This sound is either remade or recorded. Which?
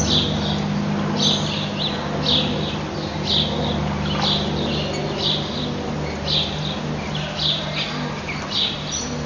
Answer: recorded